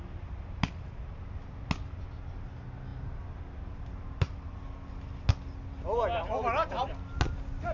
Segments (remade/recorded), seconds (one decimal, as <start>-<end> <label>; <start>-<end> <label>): 0.0-7.7 recorded